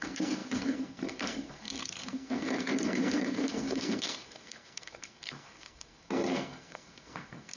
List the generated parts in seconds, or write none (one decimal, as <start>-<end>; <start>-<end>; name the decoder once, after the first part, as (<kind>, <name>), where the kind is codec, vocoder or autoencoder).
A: 0.0-7.6 (codec, SNAC)